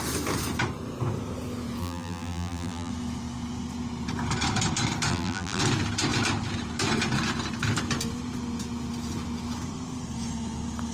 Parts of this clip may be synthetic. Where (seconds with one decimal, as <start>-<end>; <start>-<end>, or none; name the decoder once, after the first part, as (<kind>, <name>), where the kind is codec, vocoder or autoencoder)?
1.8-2.9 (vocoder, BigVGAN v2); 5.1-5.6